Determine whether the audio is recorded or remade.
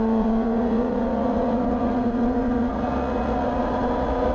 remade